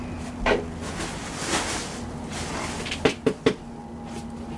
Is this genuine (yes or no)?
yes